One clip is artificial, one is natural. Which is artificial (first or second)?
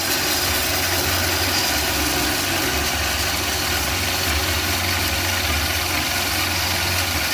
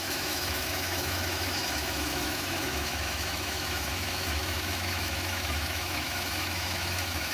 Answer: second